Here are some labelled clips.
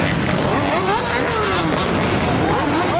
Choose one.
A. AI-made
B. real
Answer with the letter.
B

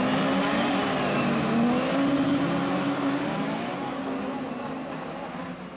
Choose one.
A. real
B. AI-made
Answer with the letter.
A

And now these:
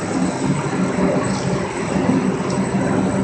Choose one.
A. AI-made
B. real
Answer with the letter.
B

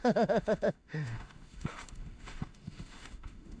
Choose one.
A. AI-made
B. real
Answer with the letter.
A